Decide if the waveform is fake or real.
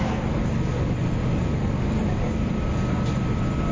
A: real